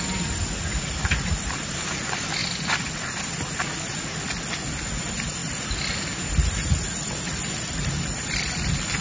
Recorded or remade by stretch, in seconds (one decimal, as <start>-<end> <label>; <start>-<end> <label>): 0.0-9.0 recorded